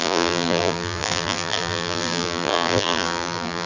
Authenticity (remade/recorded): remade